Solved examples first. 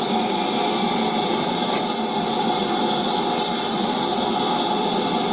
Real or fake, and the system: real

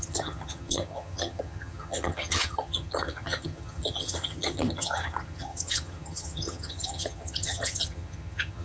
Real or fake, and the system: fake, vocoder, HiFi-GAN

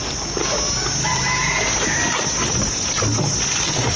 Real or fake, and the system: real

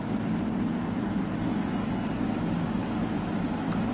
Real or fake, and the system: real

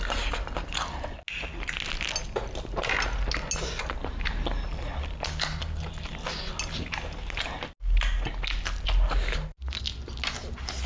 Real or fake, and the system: real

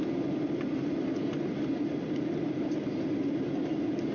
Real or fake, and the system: real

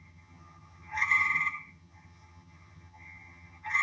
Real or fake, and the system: fake, vocoder, HiFi-GAN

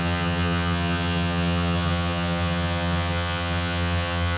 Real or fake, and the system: fake, vocoder, HiFi-GAN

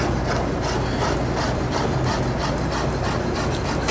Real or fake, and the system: real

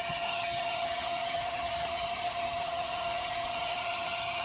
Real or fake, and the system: fake, vocoder, HiFi-GAN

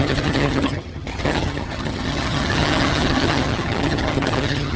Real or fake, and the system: fake, vocoder, HiFi-GAN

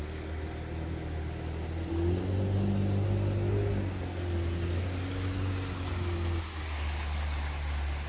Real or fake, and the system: real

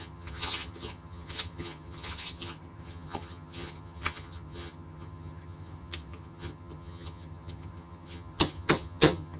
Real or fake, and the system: fake, vocoder, HiFi-GAN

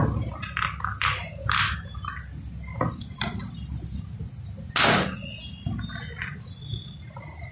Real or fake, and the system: real